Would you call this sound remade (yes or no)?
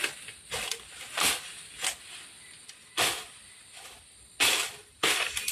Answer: no